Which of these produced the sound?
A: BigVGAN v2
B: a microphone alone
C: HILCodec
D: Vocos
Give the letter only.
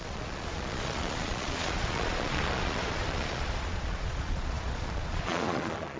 D